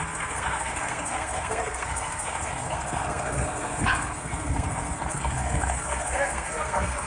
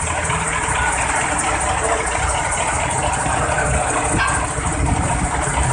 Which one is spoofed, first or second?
first